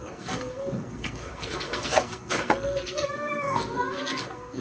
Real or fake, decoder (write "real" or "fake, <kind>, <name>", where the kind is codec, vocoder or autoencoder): fake, codec, SNAC